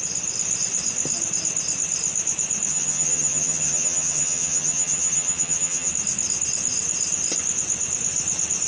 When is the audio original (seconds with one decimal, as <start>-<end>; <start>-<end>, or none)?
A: 0.0-2.7; 5.9-8.7